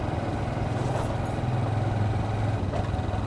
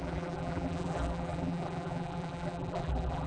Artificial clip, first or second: second